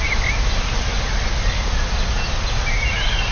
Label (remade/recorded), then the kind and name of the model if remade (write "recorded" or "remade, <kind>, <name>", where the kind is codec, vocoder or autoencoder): recorded